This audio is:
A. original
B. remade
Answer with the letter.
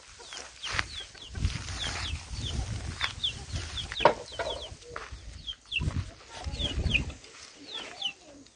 A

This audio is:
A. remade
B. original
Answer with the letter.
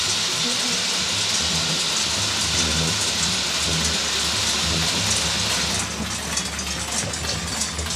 B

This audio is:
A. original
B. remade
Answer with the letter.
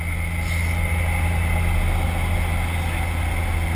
A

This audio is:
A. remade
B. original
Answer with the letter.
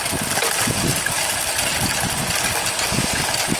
B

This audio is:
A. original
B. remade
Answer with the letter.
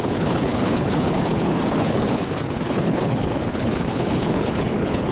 B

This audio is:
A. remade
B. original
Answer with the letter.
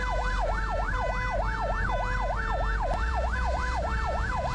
A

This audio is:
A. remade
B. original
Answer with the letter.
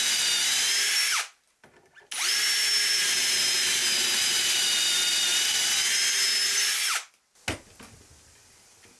B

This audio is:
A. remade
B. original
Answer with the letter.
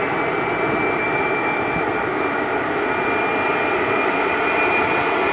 B